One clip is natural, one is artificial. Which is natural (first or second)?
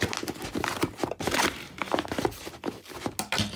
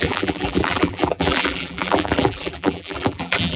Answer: first